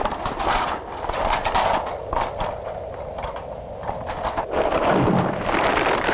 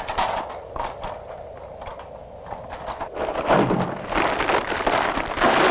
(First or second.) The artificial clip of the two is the first